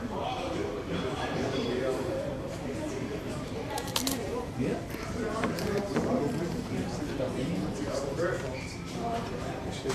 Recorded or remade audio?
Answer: remade